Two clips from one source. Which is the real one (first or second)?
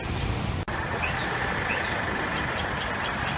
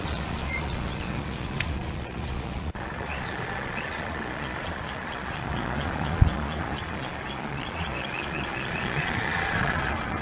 first